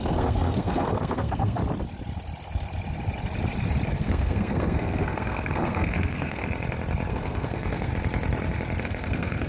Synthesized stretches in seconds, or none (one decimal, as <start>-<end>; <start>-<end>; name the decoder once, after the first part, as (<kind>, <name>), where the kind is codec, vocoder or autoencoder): 0.0-1.6 (codec, SNAC); 3.9-6.4; 7.1-7.9; 8.8-9.5